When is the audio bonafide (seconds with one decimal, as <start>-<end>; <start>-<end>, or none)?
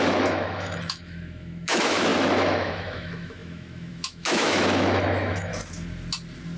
5.5-6.6